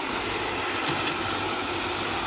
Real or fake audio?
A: real